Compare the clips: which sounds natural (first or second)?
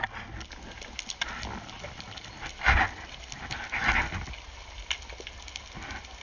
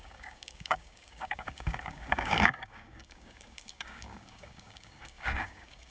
first